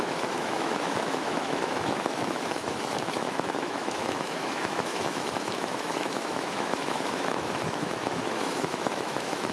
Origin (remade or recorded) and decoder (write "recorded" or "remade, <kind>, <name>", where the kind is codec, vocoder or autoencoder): remade, autoencoder, DAC-VAE